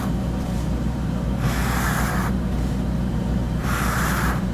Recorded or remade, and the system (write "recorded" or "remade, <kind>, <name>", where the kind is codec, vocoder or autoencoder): remade, vocoder, BigVGAN v2